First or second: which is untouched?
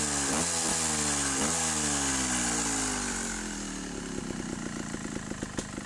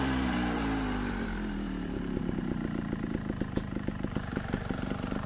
first